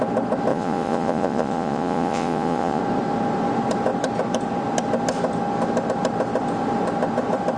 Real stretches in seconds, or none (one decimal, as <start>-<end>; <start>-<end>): 0.0-0.5; 2.8-7.6